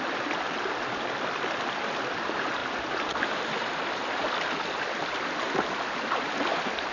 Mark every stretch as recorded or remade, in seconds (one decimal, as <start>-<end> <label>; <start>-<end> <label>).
0.0-6.9 recorded